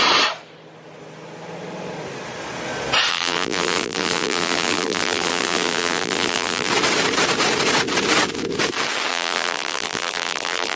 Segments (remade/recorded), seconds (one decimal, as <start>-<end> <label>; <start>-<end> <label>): 0.0-3.1 recorded; 3.1-6.7 remade; 6.7-9.1 recorded; 9.1-10.8 remade